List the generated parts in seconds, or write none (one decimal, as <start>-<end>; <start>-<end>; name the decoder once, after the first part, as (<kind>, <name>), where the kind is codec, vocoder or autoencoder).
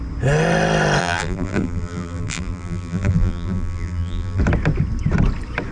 1.0-4.4 (vocoder, BigVGAN v2)